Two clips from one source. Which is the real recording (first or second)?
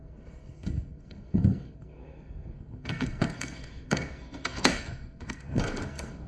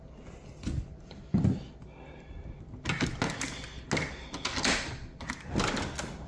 second